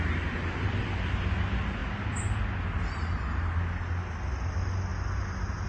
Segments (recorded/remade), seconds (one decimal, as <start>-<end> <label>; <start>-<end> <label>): 0.0-5.7 recorded